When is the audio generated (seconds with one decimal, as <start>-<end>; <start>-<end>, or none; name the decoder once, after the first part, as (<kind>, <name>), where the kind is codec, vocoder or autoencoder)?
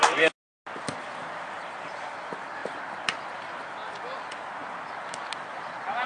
1.2-1.9 (vocoder, BigVGAN v2); 2.6-3.6